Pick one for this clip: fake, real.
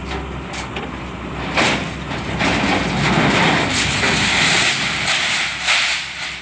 real